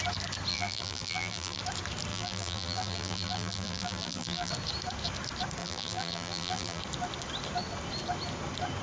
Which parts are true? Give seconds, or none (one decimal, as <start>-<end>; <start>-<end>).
0.0-0.5; 1.6-2.1; 4.5-5.6; 6.8-8.8